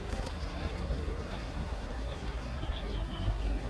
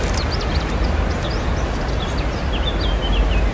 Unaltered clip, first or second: second